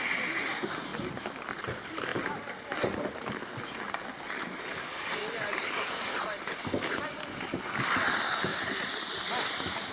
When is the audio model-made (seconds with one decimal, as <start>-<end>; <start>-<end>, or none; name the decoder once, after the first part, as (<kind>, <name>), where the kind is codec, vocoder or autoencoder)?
2.1-6.6 (vocoder, BigVGAN v2); 8.5-9.3